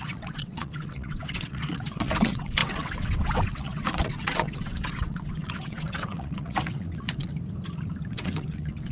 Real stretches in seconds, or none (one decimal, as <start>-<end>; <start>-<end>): 7.3-8.1